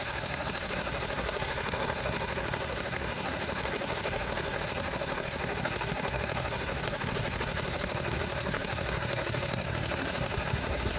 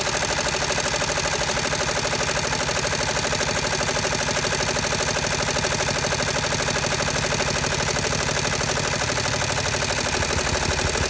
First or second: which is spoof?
first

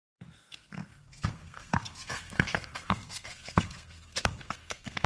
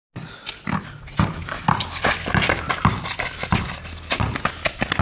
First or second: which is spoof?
first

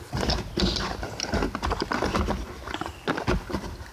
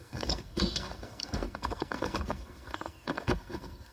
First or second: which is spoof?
second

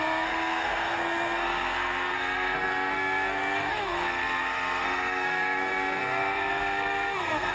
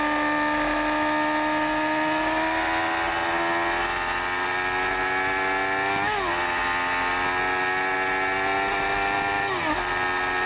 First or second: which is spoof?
first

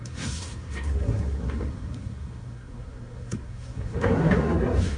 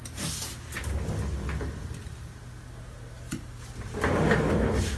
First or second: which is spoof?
first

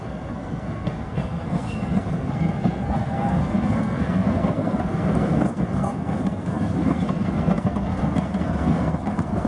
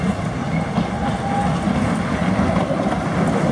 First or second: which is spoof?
first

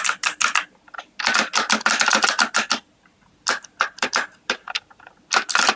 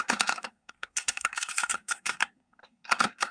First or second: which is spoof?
second